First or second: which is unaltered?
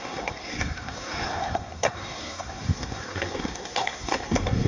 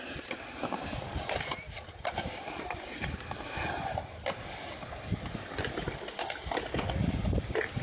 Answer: second